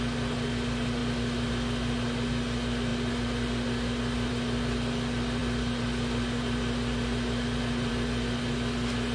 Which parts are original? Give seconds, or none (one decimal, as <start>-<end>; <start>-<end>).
0.0-9.1